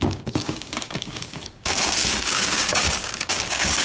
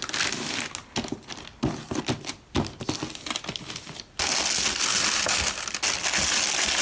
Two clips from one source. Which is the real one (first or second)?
second